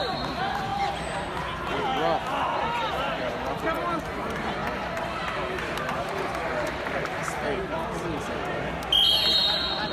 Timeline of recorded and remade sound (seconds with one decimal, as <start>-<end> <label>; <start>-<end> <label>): 0.0-0.7 recorded; 0.7-1.3 remade; 1.3-2.6 recorded; 2.6-4.0 remade; 4.0-4.6 recorded; 4.6-6.3 remade; 6.3-9.9 recorded